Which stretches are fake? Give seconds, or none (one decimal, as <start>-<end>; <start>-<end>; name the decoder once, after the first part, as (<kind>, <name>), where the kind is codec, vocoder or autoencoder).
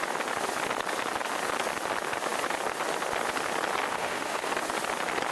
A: 3.9-4.5 (autoencoder, DAC-VAE)